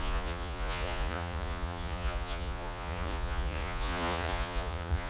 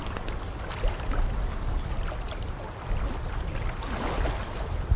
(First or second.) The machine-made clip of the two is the first